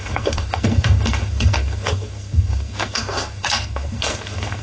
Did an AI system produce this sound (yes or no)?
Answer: yes